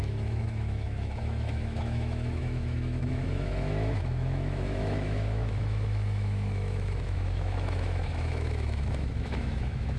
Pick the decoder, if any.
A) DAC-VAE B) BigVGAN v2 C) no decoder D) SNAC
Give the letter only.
A